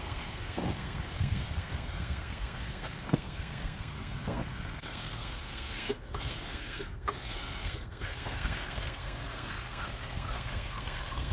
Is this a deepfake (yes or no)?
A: yes